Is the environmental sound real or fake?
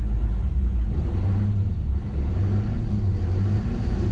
real